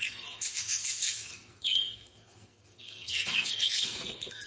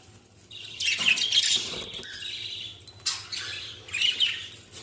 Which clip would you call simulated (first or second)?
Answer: first